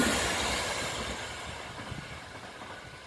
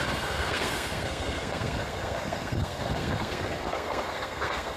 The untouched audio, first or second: first